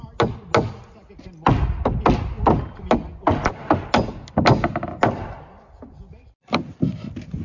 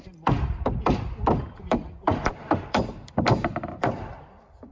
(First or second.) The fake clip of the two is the second